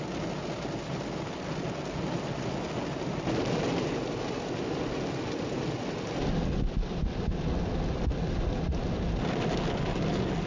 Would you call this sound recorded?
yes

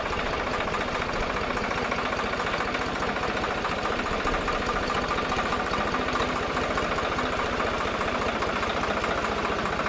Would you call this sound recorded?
yes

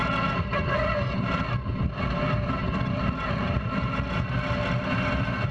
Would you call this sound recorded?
yes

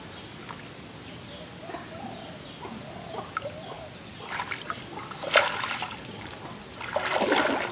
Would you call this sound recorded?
yes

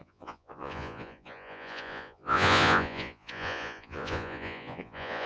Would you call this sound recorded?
no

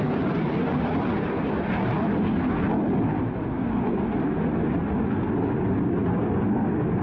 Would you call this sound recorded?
yes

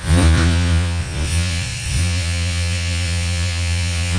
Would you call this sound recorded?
no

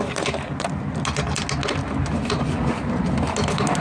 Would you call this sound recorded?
yes